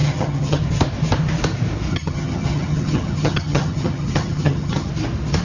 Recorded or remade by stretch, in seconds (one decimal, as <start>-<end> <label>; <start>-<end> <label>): 0.0-0.6 remade; 0.6-1.9 recorded; 1.9-4.9 remade; 4.9-5.4 recorded